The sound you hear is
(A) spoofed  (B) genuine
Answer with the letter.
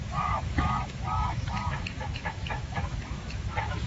A